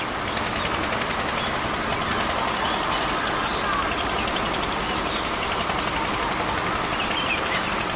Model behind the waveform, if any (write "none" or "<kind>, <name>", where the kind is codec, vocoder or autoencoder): none